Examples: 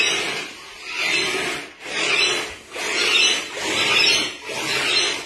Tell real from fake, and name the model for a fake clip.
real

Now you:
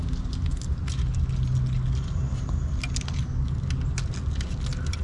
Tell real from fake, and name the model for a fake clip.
real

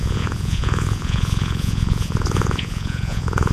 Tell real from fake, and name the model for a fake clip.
fake, vocoder, Vocos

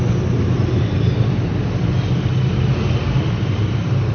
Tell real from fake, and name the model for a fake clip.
real